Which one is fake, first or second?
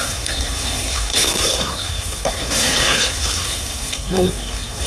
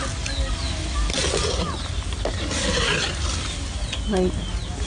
first